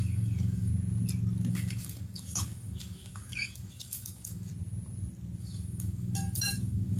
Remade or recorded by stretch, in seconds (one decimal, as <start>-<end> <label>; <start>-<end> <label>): 0.0-0.7 remade; 0.7-1.5 recorded; 1.5-4.5 remade; 4.5-5.4 recorded; 5.4-7.0 remade